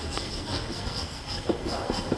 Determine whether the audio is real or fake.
fake